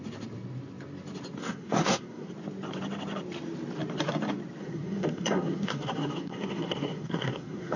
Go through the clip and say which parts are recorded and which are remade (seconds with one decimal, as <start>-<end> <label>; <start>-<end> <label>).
0.0-1.4 recorded; 1.4-2.3 remade; 2.3-4.6 recorded; 4.6-7.8 remade